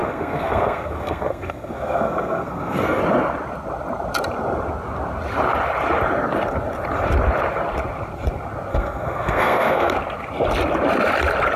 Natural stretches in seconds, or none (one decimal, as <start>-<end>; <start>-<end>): 3.0-8.7; 9.9-11.6